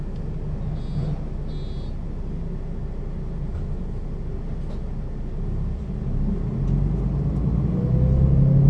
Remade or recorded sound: recorded